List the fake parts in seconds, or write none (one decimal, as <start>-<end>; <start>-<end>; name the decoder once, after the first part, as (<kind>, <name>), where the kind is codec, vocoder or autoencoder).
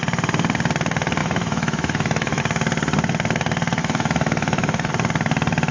1.2-2.4 (autoencoder, DAC-VAE); 3.8-4.9